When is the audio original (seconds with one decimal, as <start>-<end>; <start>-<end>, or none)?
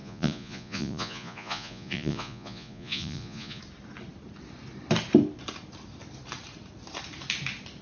3.6-7.8